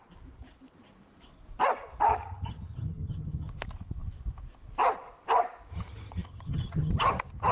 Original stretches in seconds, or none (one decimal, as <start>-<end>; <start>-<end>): 0.0-2.1; 3.5-5.7; 6.9-7.5